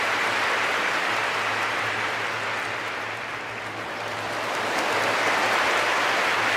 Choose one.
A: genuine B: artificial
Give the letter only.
A